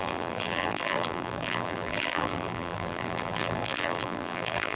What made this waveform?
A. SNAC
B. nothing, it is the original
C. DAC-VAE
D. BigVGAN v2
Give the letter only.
D